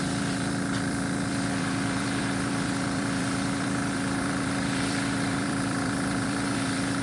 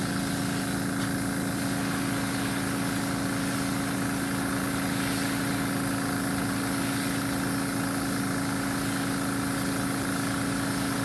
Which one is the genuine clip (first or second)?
second